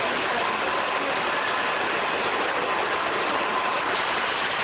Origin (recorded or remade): recorded